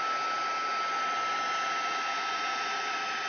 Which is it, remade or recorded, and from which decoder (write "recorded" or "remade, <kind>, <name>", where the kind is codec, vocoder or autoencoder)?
recorded